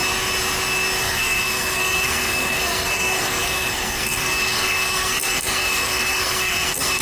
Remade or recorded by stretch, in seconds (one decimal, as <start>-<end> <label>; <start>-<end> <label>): 0.0-1.0 recorded; 1.0-7.0 remade